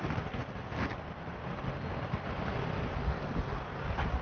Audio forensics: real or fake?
real